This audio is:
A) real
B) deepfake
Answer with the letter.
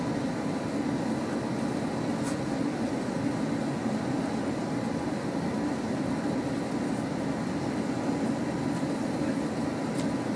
A